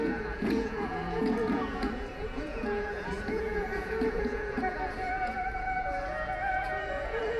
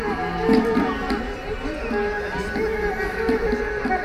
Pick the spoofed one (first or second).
first